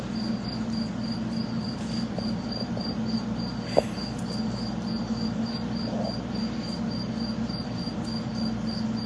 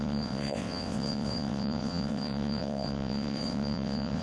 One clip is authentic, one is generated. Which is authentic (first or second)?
first